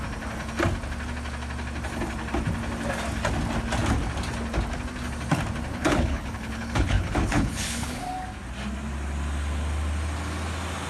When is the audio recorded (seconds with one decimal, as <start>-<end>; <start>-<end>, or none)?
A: 0.0-5.7; 8.0-10.9